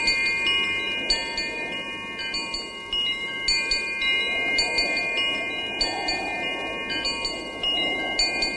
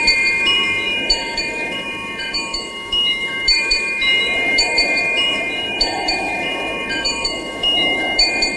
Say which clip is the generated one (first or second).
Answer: second